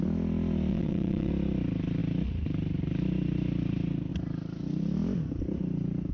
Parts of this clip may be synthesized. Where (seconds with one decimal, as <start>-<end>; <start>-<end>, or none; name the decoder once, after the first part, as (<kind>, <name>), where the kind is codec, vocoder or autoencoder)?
0.7-1.3 (vocoder, WaveNeXt)